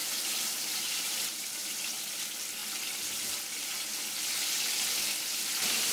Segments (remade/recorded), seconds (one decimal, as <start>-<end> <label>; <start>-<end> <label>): 0.0-2.0 remade; 2.0-5.9 recorded